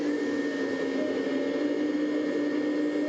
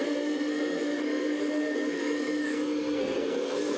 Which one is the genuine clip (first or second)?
first